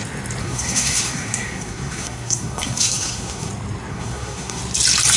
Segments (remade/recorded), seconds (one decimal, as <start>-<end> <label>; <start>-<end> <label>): 0.0-0.4 recorded; 0.4-3.5 remade; 3.5-3.9 recorded; 3.9-4.6 remade; 4.6-5.2 recorded